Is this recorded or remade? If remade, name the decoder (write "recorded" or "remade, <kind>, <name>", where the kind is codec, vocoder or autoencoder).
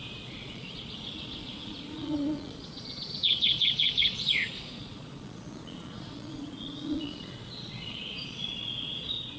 remade, vocoder, Vocos